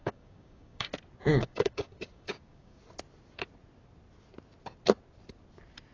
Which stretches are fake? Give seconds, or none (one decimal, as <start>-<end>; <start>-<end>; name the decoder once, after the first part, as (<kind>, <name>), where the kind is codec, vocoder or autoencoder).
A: 0.0-0.9 (codec, DAC); 1.3-2.8